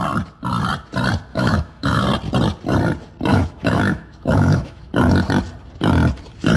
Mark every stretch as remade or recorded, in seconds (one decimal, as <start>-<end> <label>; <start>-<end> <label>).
0.0-1.3 recorded; 1.3-2.0 remade; 2.0-3.3 recorded; 3.3-4.9 remade; 4.9-6.6 recorded